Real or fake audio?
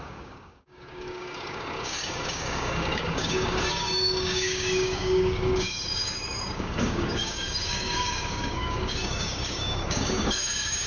fake